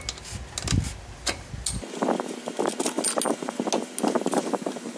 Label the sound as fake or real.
real